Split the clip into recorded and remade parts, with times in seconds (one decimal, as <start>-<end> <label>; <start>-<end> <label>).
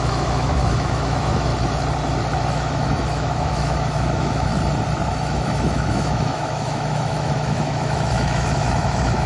0.0-1.5 remade; 1.5-2.5 recorded; 2.5-4.5 remade; 4.5-5.1 recorded; 5.1-9.3 remade